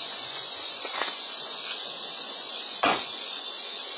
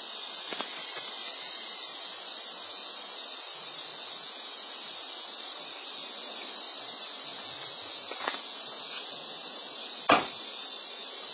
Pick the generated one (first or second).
first